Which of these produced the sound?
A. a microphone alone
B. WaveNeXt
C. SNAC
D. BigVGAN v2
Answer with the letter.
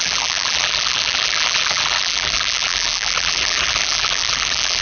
D